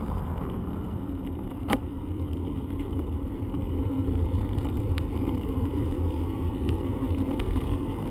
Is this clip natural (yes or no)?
no